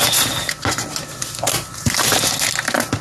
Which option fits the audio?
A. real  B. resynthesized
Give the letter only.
A